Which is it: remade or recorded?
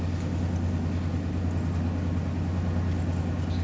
recorded